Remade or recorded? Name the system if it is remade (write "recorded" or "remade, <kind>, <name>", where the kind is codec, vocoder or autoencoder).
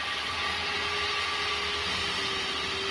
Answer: recorded